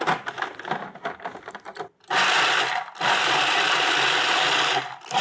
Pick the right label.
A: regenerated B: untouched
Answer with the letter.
B